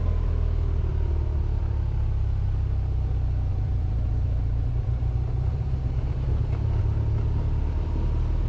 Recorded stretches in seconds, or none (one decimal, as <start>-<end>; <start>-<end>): 0.0-3.5; 6.8-8.5